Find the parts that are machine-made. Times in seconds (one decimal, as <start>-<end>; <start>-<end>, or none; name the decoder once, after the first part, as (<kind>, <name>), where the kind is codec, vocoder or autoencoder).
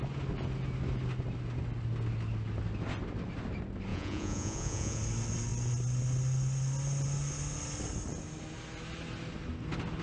3.9-5.0 (vocoder, Vocos)